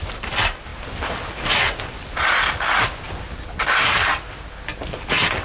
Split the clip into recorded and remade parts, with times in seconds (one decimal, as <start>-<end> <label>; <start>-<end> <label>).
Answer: 0.0-5.4 recorded